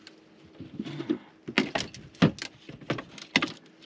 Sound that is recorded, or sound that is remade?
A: recorded